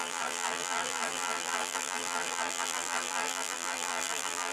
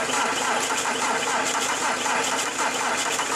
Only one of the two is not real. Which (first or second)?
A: first